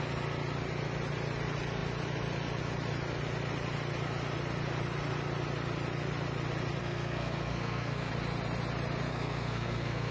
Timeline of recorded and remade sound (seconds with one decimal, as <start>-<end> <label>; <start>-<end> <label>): 0.0-6.8 recorded; 6.8-8.1 remade; 8.1-9.1 recorded; 9.1-10.1 remade